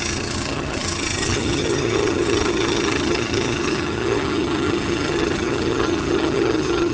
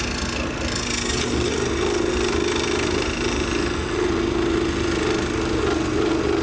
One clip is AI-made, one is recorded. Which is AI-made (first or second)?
first